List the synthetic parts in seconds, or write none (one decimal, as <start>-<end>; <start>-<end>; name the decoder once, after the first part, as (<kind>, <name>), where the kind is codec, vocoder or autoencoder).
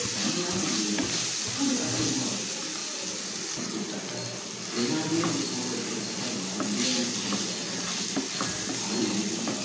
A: none